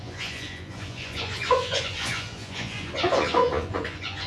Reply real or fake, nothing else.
fake